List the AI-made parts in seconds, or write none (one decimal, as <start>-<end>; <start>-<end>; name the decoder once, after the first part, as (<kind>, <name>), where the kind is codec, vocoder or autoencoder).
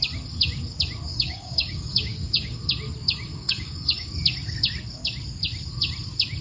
1.1-2.6 (codec, DAC); 3.3-4.1